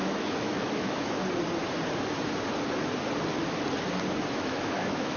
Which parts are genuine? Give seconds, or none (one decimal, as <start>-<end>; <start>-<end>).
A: 1.2-4.3